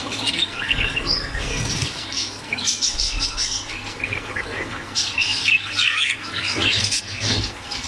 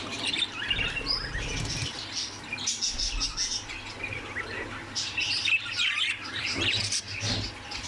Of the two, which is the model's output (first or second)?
first